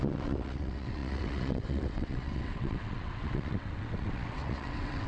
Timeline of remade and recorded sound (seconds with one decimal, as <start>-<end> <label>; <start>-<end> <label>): 0.0-5.1 remade